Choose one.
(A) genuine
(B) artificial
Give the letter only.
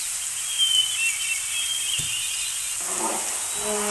A